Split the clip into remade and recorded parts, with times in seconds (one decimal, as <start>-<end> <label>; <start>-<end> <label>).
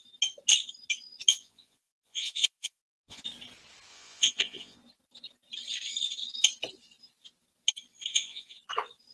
0.0-1.3 recorded; 1.3-3.2 remade; 3.2-3.9 recorded; 3.9-4.8 remade; 4.8-8.1 recorded; 8.1-8.6 remade; 8.6-9.1 recorded